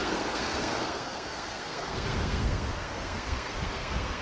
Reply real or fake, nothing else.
fake